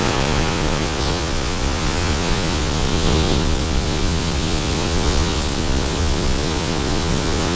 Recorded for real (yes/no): no